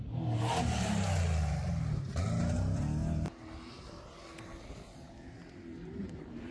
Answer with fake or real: real